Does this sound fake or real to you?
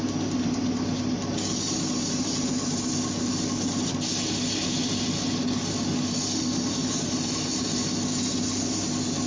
real